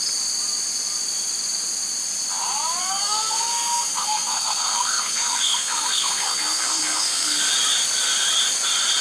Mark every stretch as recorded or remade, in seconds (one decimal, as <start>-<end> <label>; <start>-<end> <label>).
0.0-2.8 recorded; 2.8-7.5 remade; 7.5-9.0 recorded